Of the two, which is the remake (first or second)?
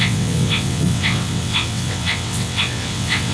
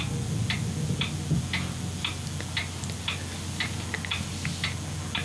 first